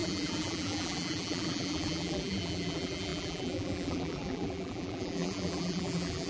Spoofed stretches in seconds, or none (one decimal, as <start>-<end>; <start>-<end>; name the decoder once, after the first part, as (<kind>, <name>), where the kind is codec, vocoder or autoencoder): 0.0-6.3 (vocoder, BigVGAN v2)